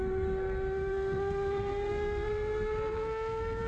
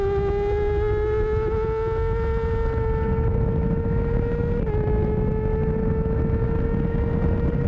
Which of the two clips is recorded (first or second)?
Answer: second